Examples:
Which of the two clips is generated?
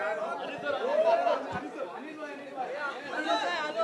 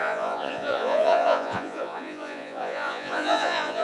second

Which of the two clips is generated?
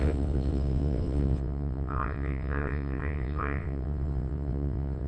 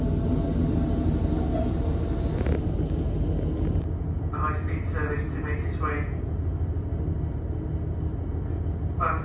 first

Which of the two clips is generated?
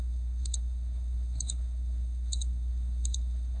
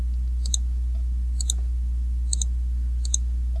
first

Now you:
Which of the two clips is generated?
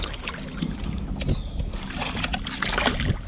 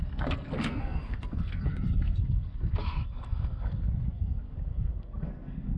second